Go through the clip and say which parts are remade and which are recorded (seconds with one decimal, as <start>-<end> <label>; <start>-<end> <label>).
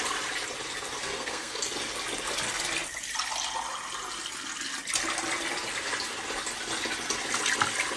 0.0-1.0 recorded; 1.0-1.6 remade; 1.6-8.0 recorded